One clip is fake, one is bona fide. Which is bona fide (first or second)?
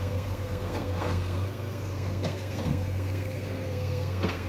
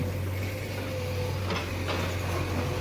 second